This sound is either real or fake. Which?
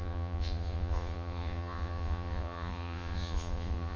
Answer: fake